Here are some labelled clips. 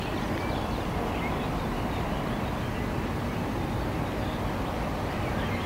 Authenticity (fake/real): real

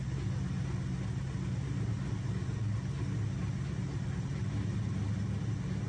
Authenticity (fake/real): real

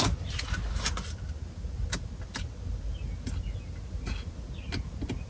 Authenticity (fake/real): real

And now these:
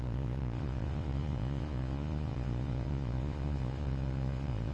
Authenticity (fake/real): fake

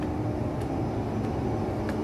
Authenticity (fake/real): real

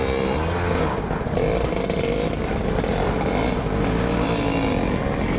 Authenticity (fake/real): real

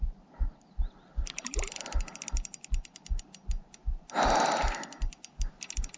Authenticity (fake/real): real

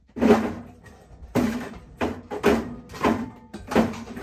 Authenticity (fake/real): fake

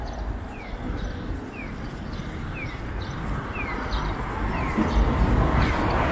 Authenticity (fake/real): real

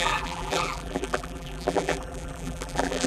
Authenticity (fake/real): fake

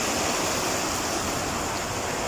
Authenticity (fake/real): real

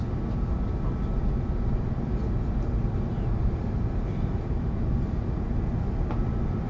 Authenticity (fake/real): real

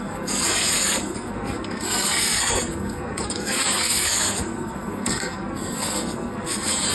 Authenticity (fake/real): fake